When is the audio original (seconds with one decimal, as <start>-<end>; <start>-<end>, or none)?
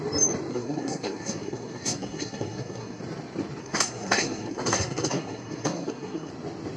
0.0-0.5; 3.0-3.6; 6.3-6.8